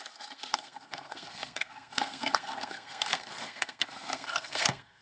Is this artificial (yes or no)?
yes